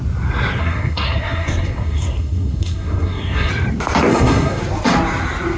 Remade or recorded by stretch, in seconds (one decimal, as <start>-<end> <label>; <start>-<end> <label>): 0.0-0.6 recorded; 0.6-3.5 remade; 3.5-4.1 recorded; 4.1-4.6 remade; 4.6-5.6 recorded

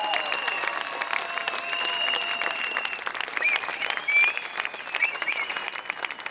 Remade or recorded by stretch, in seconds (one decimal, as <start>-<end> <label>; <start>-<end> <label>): 0.0-5.0 recorded; 5.0-5.7 remade; 5.7-6.3 recorded